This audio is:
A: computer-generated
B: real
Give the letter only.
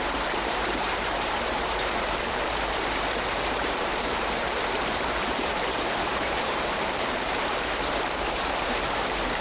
A